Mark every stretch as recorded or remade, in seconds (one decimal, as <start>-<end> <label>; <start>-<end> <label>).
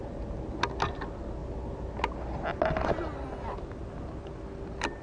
0.0-5.0 recorded